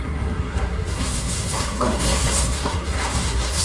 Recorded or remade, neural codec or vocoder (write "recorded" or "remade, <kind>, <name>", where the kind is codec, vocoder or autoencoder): remade, codec, SNAC